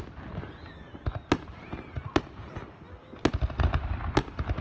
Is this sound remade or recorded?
recorded